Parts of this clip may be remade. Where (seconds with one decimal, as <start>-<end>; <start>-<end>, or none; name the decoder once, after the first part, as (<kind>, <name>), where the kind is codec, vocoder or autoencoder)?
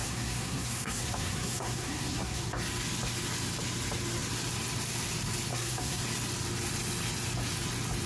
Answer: 0.0-2.5 (codec, SNAC); 5.5-6.0